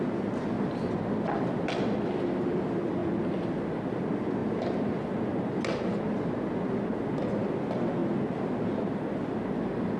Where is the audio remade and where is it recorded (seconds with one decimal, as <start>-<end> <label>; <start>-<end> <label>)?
0.0-10.0 recorded